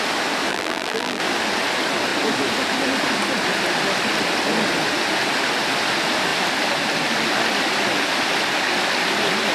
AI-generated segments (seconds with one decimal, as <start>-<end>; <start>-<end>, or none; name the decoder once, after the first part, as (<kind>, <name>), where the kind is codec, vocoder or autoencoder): 0.5-1.2 (vocoder, BigVGAN v2)